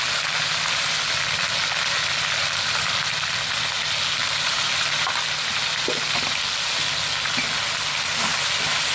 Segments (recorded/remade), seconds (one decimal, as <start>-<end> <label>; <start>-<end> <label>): 0.0-4.2 recorded; 4.2-5.1 remade; 5.1-8.9 recorded